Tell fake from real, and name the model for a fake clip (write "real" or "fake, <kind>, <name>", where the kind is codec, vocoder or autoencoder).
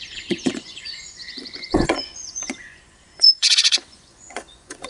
fake, vocoder, Vocos